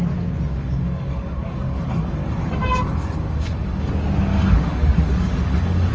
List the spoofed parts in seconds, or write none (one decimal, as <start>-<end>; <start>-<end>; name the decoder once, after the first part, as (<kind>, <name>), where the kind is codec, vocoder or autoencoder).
0.5-3.9 (codec, DAC); 4.3-5.9

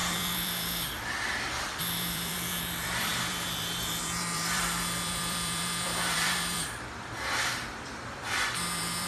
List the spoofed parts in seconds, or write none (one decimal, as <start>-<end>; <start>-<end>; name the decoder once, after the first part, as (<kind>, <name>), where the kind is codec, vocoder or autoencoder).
0.0-9.1 (vocoder, BigVGAN v2)

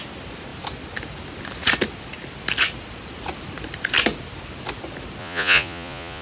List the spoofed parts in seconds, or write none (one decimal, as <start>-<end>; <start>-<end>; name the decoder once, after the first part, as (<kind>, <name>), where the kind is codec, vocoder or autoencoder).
5.2-6.2 (vocoder, Vocos)

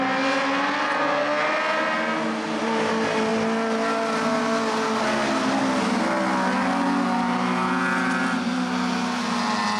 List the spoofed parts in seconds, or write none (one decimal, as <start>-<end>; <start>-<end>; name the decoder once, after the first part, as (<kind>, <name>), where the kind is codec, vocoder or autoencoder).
none

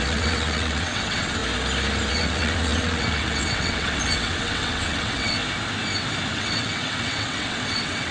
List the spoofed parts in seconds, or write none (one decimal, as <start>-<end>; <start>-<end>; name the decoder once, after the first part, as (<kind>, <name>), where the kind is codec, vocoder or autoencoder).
0.0-1.4 (vocoder, WaveNeXt); 2.1-5.4; 6.3-8.1

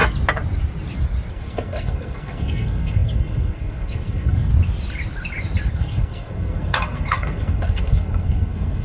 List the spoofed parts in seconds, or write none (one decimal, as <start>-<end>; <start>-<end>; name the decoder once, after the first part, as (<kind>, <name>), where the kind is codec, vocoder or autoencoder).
1.3-4.5 (codec, SNAC); 5.7-8.8

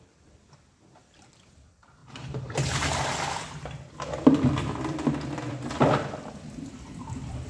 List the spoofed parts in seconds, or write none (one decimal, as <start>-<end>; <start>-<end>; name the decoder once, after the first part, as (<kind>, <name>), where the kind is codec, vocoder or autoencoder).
0.0-7.5 (vocoder, BigVGAN v2)